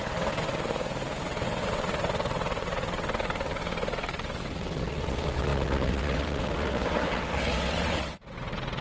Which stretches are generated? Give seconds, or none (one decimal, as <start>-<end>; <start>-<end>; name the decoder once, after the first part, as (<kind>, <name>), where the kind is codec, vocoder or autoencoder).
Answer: 0.0-0.5 (vocoder, WaveNeXt); 1.2-8.8